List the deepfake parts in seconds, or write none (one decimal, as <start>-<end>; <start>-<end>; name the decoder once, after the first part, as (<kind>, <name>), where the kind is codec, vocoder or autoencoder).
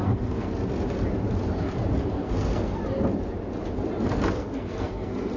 0.0-0.5 (codec, SNAC); 2.0-2.8; 4.3-5.4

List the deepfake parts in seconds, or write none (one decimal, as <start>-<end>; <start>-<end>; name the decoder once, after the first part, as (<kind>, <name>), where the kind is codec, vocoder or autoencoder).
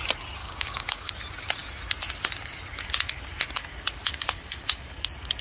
0.4-1.1 (codec, DAC)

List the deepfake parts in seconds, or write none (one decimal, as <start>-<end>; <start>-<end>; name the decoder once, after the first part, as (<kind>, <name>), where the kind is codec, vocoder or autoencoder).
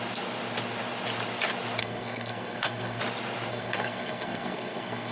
1.8-3.0 (codec, SNAC); 3.5-5.1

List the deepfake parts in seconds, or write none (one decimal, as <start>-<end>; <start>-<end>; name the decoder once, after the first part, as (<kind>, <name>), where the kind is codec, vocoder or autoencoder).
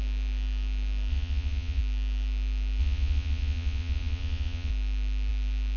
1.1-1.8 (vocoder, Vocos); 2.8-4.7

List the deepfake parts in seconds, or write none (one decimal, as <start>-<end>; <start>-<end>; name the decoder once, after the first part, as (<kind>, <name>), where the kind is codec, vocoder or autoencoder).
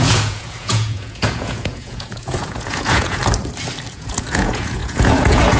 0.0-3.2 (vocoder, Vocos); 3.9-5.6